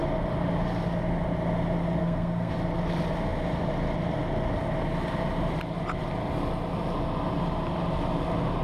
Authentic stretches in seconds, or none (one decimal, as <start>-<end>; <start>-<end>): 0.0-2.0; 2.5-8.6